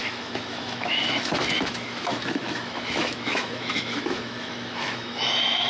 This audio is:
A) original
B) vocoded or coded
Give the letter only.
B